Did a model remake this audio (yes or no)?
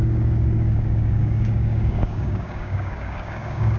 yes